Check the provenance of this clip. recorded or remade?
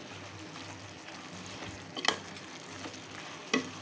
recorded